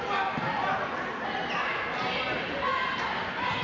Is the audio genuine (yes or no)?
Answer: yes